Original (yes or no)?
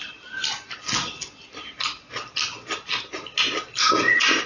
yes